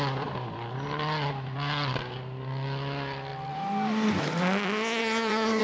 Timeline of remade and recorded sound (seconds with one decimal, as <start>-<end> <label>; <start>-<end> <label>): 0.0-5.0 recorded; 5.0-5.6 remade